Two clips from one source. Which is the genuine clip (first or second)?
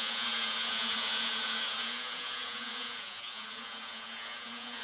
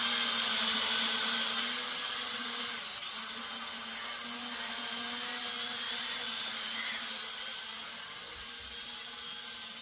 second